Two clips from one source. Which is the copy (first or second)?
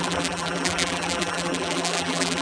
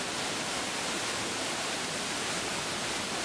first